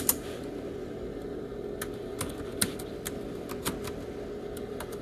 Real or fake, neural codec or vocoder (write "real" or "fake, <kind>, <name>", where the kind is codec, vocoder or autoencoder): real